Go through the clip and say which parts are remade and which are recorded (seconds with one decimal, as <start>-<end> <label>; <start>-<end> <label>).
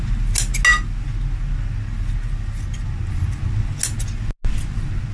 0.0-5.1 recorded